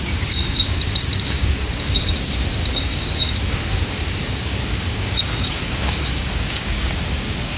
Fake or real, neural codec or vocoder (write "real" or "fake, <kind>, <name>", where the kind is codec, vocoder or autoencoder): fake, codec, DAC